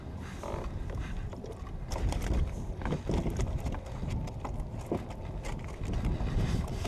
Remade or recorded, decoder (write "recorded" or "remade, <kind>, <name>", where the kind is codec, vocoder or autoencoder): recorded